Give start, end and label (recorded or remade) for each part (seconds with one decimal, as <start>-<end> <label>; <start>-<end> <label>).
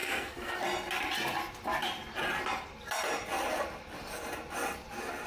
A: 0.0-0.6 remade; 0.6-5.3 recorded